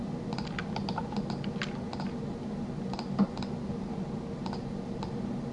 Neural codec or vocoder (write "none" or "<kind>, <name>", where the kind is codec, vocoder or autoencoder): none